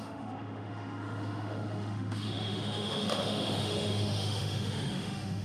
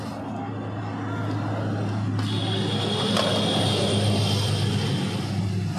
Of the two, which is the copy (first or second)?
first